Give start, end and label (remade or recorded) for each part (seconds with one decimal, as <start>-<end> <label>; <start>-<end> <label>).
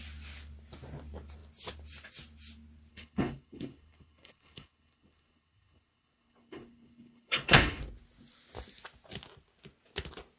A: 0.0-2.9 recorded; 2.9-7.8 remade; 7.8-10.4 recorded